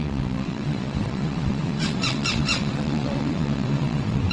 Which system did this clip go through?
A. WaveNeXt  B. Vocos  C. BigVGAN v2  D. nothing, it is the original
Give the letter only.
A